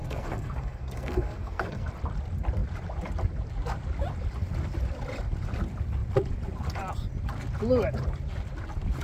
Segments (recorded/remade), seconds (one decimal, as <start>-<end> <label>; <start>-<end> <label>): 0.0-1.9 remade; 1.9-9.0 recorded